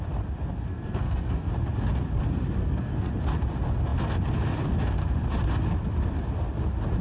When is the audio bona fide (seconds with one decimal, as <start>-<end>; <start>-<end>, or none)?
0.0-0.7; 1.5-2.6; 3.1-7.0